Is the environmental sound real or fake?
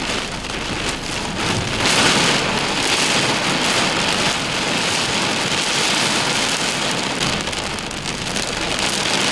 real